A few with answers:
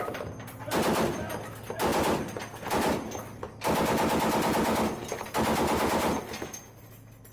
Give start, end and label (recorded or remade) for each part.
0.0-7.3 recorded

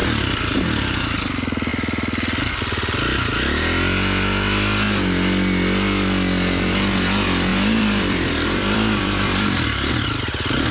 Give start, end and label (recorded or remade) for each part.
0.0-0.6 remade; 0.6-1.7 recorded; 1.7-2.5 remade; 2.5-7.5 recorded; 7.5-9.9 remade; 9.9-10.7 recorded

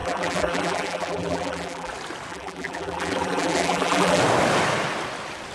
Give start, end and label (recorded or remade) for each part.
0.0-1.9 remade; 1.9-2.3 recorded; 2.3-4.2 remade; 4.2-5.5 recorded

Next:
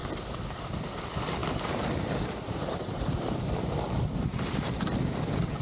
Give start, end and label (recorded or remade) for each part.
0.0-1.4 recorded; 1.4-4.8 remade; 4.8-5.6 recorded

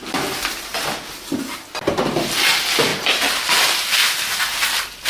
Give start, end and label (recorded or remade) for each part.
0.0-2.9 recorded; 2.9-3.4 remade; 3.4-4.0 recorded; 4.0-5.1 remade

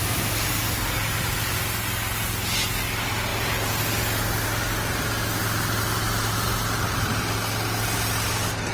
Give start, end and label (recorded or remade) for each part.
0.0-8.7 recorded

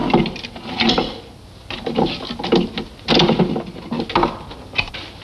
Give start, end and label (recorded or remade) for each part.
0.0-5.2 recorded

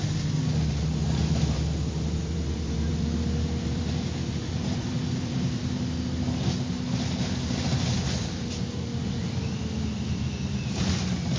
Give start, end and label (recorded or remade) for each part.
0.0-1.2 recorded; 1.2-5.8 remade; 5.8-11.4 recorded